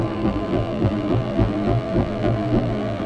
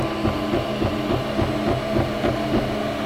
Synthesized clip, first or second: first